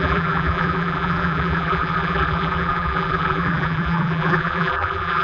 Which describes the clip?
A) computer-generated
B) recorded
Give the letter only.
A